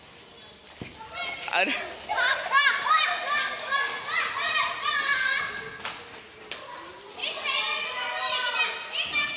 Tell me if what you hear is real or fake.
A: real